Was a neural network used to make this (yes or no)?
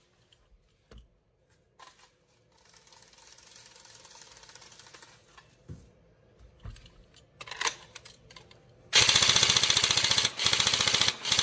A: no